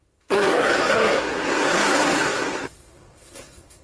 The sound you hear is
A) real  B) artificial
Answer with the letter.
B